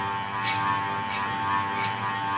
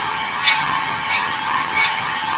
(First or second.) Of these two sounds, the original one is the first